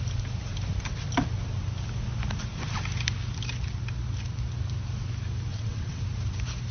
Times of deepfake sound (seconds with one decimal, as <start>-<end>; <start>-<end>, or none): 5.5-6.0